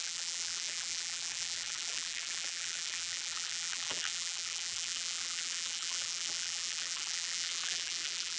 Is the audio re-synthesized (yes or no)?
yes